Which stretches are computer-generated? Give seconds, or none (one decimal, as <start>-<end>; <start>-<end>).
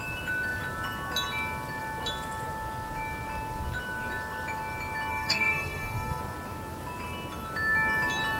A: 5.1-6.2